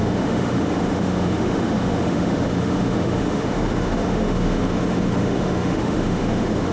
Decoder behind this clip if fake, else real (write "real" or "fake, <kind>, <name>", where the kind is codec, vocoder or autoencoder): fake, autoencoder, DAC-VAE